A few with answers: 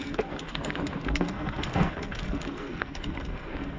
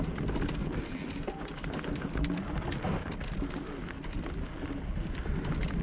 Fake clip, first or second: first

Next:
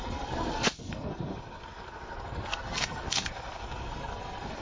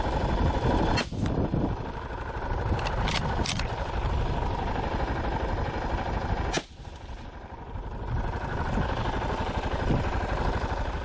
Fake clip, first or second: first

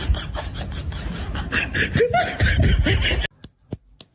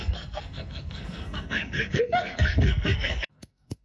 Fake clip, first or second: second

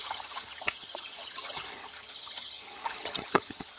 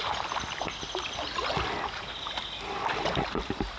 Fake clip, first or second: first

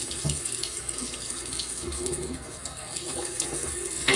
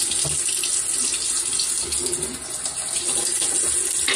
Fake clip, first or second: first